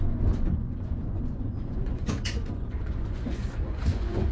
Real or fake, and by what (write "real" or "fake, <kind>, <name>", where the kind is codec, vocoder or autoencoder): fake, vocoder, Vocos